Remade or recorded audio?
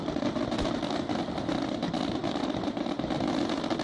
remade